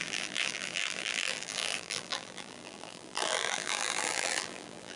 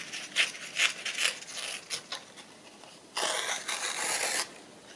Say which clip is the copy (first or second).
first